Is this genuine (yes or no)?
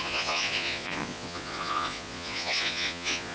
no